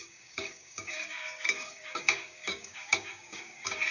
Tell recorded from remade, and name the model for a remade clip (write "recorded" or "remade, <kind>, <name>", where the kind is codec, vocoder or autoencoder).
remade, codec, DAC